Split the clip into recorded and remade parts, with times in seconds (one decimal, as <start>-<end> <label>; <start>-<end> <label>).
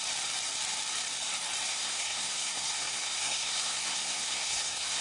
0.0-1.7 recorded; 1.7-5.0 remade